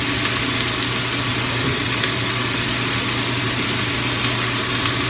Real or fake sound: real